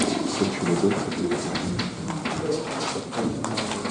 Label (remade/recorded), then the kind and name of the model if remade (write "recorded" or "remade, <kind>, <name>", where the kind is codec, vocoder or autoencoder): recorded